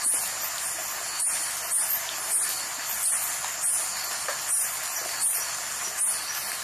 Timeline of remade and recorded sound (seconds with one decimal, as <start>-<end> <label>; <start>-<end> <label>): 0.0-6.6 recorded